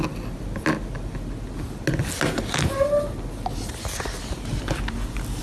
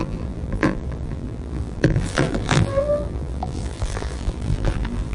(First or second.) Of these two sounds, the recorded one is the first